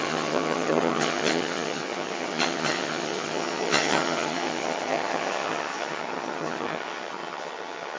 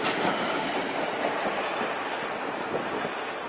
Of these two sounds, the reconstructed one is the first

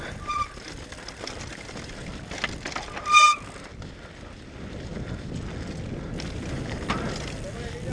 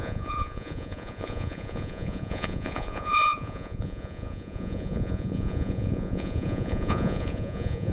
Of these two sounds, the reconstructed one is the second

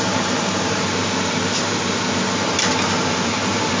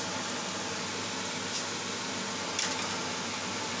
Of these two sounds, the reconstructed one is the first